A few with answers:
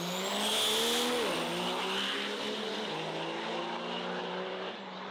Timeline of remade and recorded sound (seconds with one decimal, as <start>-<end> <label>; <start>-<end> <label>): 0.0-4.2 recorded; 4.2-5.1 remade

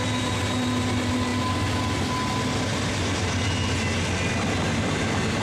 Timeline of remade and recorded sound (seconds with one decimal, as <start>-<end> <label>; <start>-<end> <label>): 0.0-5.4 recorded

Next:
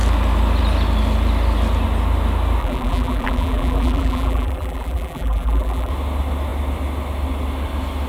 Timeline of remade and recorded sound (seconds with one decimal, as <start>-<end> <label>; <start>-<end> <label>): 0.0-2.6 recorded; 2.6-5.9 remade; 5.9-8.1 recorded